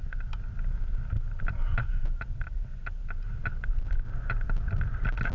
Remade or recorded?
recorded